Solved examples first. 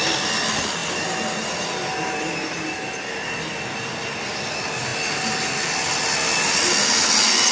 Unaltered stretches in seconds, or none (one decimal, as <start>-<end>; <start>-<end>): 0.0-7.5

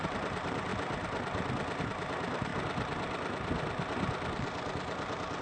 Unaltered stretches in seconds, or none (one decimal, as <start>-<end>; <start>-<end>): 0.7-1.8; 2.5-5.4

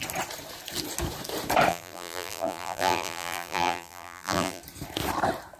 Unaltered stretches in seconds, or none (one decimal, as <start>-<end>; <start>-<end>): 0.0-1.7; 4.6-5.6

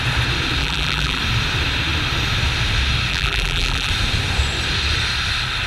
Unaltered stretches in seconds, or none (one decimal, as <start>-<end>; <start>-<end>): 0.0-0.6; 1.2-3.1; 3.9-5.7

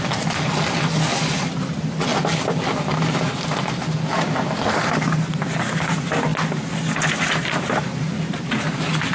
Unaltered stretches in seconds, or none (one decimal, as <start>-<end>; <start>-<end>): 0.0-9.1